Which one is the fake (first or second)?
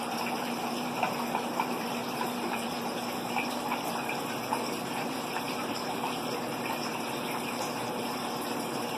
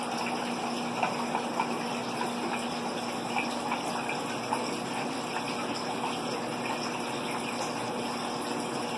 first